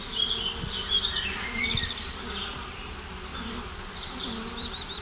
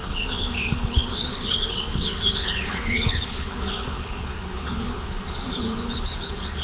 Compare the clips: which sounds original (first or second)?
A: first